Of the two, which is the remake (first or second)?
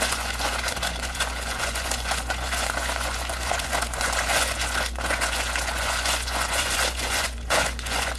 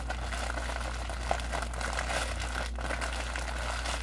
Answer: first